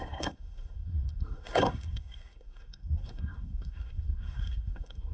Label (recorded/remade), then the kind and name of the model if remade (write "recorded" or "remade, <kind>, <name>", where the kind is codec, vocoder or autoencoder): remade, codec, SNAC